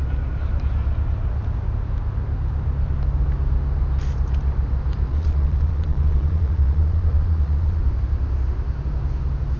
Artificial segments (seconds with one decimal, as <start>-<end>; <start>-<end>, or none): 5.1-7.8